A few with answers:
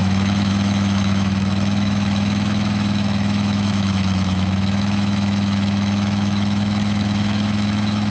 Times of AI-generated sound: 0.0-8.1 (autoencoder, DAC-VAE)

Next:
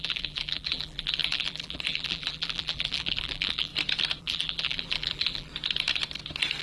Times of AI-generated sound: 0.0-3.7 (vocoder, BigVGAN v2); 4.2-5.5

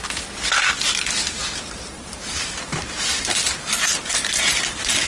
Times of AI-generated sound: 1.4-4.5 (vocoder, BigVGAN v2)